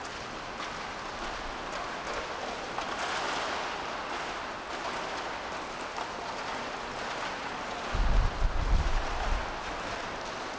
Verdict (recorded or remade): recorded